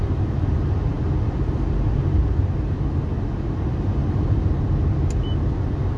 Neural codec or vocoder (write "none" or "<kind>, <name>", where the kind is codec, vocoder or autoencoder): none